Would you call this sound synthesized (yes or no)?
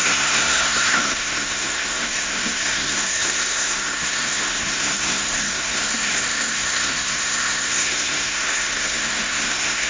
yes